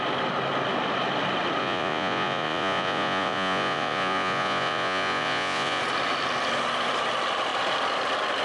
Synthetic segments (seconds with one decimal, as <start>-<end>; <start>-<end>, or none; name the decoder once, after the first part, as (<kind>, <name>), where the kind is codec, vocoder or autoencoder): 1.6-5.8 (vocoder, Vocos)